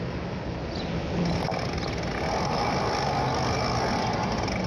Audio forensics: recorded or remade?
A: recorded